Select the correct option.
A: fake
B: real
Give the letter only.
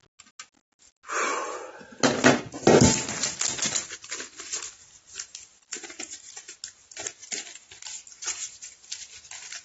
B